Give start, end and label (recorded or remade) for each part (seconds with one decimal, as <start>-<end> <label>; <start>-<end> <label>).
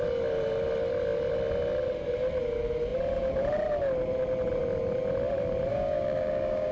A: 0.0-5.7 recorded; 5.7-6.7 remade